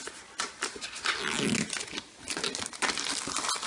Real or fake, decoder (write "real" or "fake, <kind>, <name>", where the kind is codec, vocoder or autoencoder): real